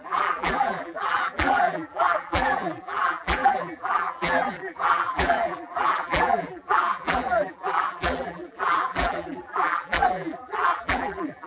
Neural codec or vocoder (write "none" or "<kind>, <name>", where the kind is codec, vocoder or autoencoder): vocoder, BigVGAN v2